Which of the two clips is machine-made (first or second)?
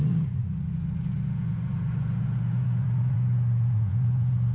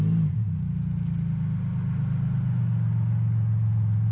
first